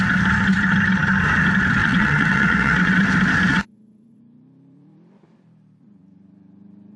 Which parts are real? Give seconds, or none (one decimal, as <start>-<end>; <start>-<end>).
0.0-1.8; 3.0-3.5; 4.2-7.0